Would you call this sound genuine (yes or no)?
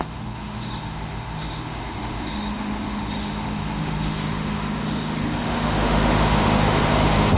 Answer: no